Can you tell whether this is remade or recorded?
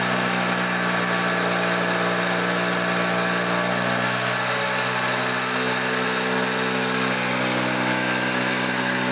recorded